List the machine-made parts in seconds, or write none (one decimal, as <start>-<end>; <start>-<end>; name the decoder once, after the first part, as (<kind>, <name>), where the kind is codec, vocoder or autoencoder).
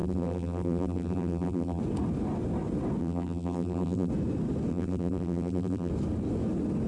0.0-1.8 (vocoder, BigVGAN v2); 3.0-4.1; 4.7-5.9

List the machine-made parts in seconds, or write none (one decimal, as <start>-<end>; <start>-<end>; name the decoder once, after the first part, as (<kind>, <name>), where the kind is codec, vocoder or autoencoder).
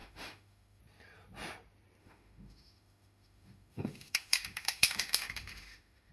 0.0-0.8 (autoencoder, DAC-VAE); 2.0-6.1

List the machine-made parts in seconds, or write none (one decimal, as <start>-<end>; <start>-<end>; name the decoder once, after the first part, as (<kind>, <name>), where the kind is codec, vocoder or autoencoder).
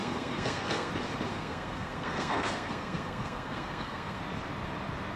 0.0-0.9 (codec, SNAC); 1.3-4.2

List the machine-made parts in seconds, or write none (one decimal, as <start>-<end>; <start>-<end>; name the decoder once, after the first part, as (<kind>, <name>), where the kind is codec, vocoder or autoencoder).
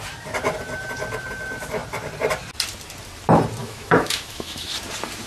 3.6-4.7 (autoencoder, DAC-VAE)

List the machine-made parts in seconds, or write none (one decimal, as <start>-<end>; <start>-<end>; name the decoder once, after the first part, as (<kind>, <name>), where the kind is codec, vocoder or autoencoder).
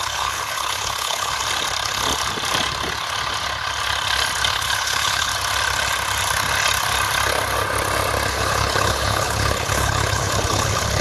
0.0-1.4 (codec, HILCodec); 4.5-5.3; 8.3-11.0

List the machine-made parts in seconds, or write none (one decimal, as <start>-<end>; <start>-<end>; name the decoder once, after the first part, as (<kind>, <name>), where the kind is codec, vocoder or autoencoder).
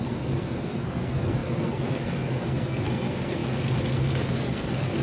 0.0-5.0 (codec, SNAC)